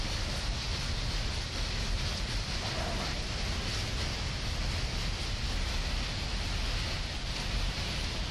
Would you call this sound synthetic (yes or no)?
no